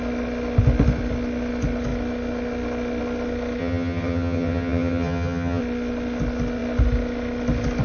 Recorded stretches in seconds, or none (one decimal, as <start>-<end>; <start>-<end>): 0.0-3.6; 5.6-7.8